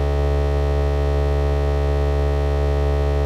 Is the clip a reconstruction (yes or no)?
no